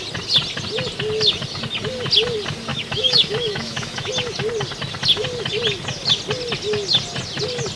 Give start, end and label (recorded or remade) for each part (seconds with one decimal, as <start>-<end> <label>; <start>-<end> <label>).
0.0-2.7 recorded; 2.7-4.1 remade; 4.1-7.8 recorded

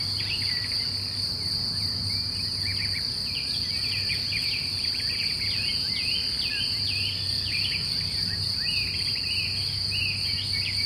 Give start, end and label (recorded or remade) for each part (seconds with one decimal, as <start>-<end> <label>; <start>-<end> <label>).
0.0-10.9 recorded

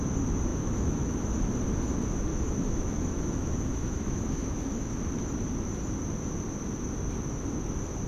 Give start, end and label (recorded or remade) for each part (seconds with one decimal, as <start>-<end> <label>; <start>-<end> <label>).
0.0-0.5 recorded; 0.5-1.5 remade; 1.5-2.3 recorded; 2.3-5.0 remade; 5.0-8.1 recorded

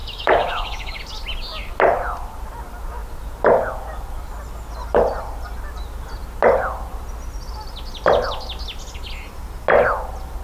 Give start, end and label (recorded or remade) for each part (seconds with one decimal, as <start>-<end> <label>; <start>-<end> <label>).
0.0-1.0 remade; 1.0-10.4 recorded

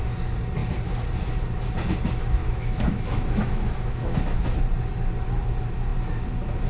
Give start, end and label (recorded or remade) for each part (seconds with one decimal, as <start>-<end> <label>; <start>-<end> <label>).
0.0-2.4 recorded; 2.4-4.6 remade; 4.6-6.7 recorded

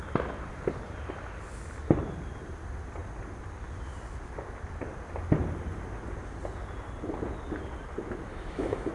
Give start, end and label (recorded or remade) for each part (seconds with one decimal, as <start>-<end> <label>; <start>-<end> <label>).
0.0-8.3 recorded; 8.3-8.9 remade

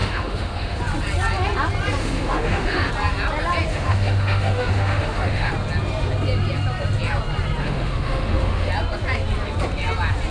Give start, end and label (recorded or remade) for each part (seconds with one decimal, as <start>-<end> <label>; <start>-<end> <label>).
0.0-0.8 remade; 0.8-2.0 recorded; 2.0-2.9 remade; 2.9-3.7 recorded; 3.7-5.5 remade; 5.5-7.6 recorded; 7.6-8.7 remade; 8.7-10.3 recorded

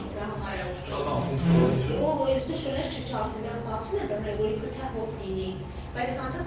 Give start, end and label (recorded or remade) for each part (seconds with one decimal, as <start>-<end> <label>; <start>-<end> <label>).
0.0-0.5 recorded; 0.5-2.4 remade; 2.4-6.5 recorded